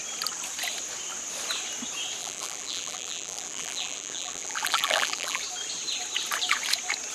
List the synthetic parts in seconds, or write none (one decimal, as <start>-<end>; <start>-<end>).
2.2-5.4